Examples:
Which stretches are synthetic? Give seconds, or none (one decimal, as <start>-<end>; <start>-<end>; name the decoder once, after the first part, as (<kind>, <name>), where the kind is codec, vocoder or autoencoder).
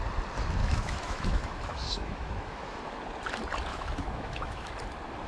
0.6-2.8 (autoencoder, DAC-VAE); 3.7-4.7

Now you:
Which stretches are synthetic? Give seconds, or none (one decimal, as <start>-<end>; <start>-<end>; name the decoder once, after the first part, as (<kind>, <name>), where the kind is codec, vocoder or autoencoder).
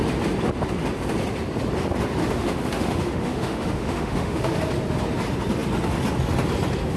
2.2-4.6 (autoencoder, DAC-VAE)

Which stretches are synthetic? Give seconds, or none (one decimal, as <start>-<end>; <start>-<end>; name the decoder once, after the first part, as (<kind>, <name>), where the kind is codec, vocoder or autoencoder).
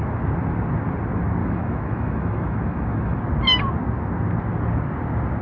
1.4-3.2 (autoencoder, DAC-VAE)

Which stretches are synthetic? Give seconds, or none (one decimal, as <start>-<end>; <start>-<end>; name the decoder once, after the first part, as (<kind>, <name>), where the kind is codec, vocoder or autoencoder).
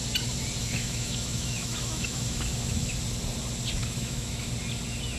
0.6-2.9 (autoencoder, DAC-VAE); 3.8-4.5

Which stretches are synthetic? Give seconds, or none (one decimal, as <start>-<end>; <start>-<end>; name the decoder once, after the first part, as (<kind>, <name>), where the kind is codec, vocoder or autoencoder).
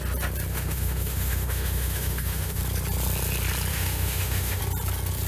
0.5-2.6 (autoencoder, DAC-VAE); 3.7-4.6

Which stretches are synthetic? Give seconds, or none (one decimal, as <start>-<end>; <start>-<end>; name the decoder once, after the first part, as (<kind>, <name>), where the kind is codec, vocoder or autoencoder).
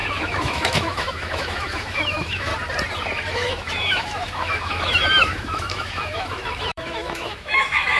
0.0-2.5 (autoencoder, DAC-VAE); 3.3-8.0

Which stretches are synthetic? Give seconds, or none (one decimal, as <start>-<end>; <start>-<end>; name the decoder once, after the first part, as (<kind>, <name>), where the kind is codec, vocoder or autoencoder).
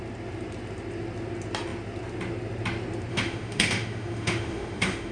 3.1-5.1 (autoencoder, DAC-VAE)